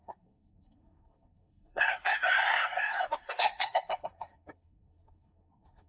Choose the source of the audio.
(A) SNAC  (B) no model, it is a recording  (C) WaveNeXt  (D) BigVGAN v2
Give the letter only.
A